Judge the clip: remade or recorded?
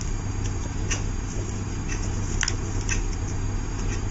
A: recorded